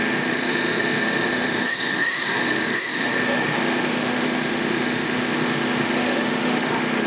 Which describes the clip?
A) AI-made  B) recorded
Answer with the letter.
A